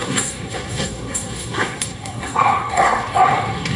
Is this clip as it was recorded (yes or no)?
no